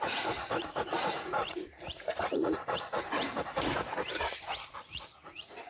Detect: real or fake fake